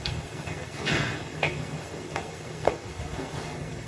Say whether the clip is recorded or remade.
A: remade